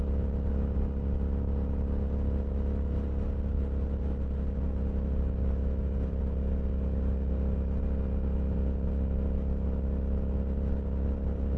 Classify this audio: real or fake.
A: real